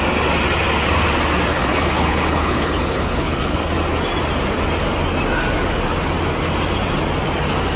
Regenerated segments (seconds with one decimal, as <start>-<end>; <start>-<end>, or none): 1.5-3.7